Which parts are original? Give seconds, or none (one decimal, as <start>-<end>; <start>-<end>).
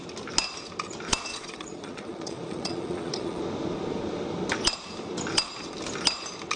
0.0-1.3; 3.4-6.6